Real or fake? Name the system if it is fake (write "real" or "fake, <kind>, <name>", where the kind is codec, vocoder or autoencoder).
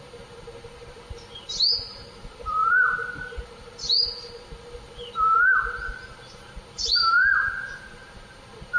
fake, vocoder, BigVGAN v2